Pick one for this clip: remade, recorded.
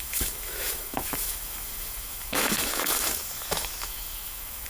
remade